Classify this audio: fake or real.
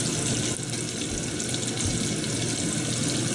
real